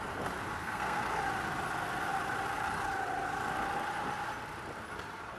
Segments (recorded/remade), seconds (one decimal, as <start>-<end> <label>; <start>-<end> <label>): 0.0-0.6 recorded; 0.6-1.2 remade; 1.2-5.4 recorded